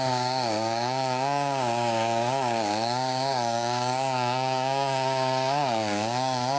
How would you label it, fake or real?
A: fake